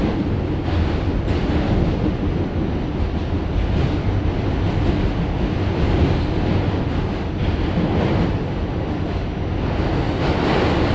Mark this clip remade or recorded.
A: recorded